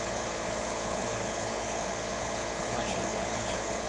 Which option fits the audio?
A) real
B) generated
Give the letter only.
B